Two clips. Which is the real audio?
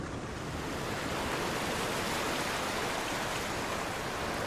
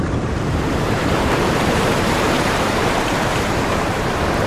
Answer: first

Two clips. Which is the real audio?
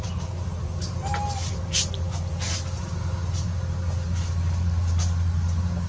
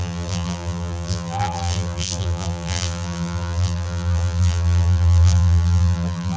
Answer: first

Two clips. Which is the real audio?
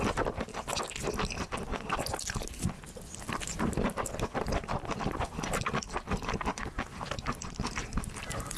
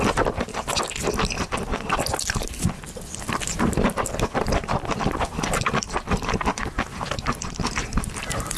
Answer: first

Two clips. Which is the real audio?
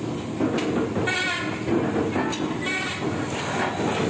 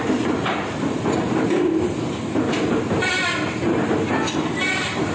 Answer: first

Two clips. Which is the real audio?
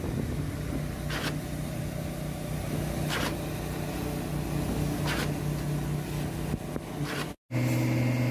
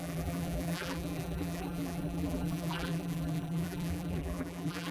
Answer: first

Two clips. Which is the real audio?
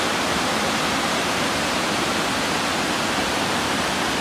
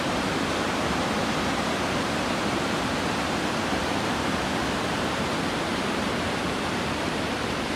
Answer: first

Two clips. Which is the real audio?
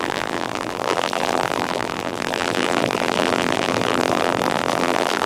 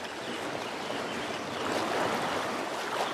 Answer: second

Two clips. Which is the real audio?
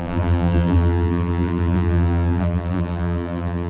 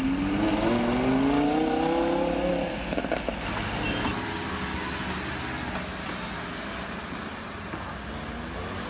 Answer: second